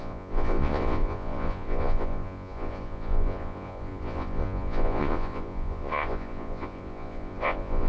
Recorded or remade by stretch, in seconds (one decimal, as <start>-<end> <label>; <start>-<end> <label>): 0.0-7.9 remade